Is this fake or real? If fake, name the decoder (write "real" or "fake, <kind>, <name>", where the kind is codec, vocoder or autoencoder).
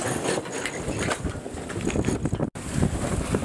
real